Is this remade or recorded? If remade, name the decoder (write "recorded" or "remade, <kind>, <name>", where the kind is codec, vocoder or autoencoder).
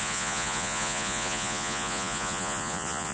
remade, vocoder, Vocos